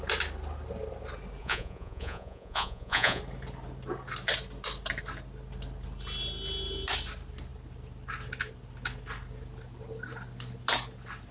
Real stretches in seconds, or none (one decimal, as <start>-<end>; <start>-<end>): 0.0-1.4; 3.2-11.3